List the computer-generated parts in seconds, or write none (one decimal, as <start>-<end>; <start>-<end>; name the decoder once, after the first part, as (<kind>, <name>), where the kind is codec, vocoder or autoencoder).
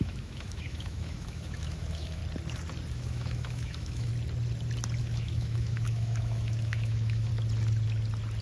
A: 0.0-2.2 (autoencoder, DAC-VAE); 2.9-4.1; 5.0-7.3